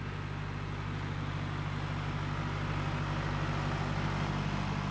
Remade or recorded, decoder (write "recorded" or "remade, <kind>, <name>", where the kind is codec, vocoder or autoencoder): recorded